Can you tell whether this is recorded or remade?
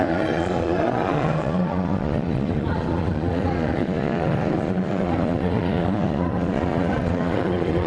remade